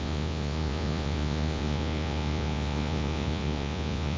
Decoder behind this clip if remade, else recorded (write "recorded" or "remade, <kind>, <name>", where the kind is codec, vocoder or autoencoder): remade, vocoder, Vocos